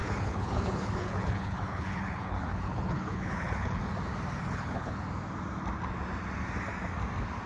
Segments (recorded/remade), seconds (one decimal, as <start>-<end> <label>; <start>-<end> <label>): 0.0-3.8 remade; 3.8-4.4 recorded; 4.4-4.9 remade; 4.9-7.5 recorded